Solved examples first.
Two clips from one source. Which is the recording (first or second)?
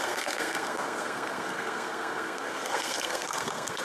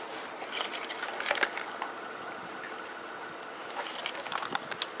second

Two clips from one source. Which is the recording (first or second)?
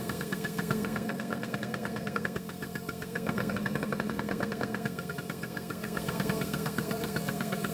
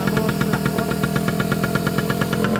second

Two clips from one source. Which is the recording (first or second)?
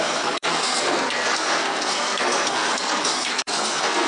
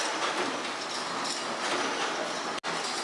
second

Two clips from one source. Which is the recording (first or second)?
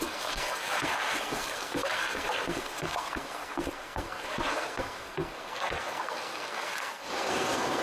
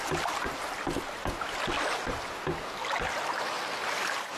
second